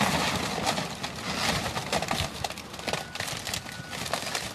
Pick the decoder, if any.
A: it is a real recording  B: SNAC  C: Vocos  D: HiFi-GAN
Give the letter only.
A